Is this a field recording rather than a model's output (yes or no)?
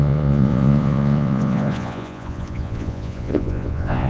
no